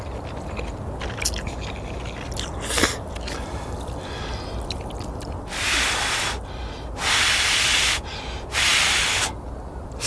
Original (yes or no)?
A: yes